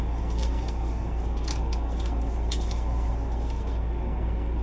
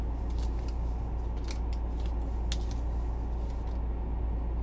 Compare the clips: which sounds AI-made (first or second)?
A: first